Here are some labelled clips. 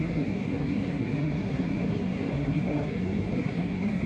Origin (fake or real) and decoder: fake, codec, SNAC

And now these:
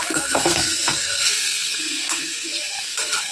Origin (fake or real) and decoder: fake, codec, SNAC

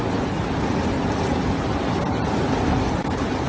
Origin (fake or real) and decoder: real